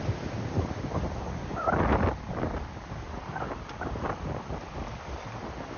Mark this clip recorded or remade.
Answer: recorded